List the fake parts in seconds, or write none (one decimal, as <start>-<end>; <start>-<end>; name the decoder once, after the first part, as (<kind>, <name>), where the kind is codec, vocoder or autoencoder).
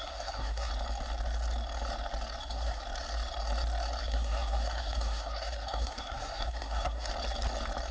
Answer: 0.0-0.7 (codec, SNAC); 2.4-2.8; 4.0-7.1